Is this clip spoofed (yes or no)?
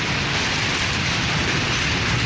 no